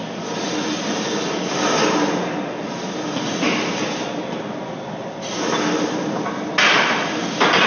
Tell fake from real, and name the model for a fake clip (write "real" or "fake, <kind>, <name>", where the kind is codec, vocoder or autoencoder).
real